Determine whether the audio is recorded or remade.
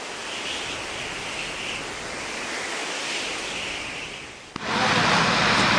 recorded